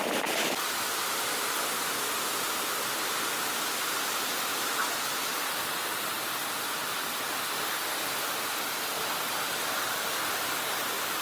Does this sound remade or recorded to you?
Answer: recorded